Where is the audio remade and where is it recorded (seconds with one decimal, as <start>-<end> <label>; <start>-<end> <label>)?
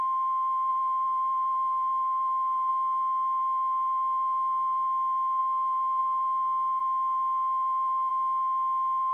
0.0-0.7 recorded; 0.7-2.7 remade; 2.7-9.1 recorded